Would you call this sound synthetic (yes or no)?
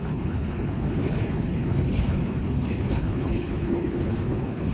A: yes